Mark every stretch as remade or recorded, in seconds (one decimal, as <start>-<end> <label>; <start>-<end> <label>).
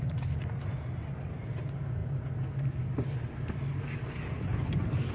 0.0-5.1 recorded